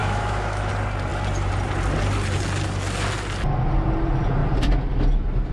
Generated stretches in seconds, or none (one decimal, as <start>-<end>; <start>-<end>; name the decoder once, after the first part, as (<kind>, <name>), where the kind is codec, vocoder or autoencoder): 0.0-0.7 (autoencoder, DAC-VAE)